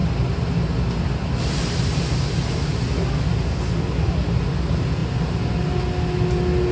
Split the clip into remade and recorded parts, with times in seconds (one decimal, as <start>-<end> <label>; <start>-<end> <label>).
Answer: 0.0-6.7 recorded